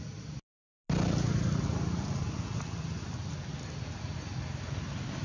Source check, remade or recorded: recorded